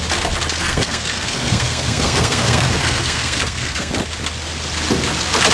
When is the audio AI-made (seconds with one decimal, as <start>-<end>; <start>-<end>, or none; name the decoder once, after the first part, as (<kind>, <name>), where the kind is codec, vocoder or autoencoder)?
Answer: 0.6-3.9 (codec, SNAC)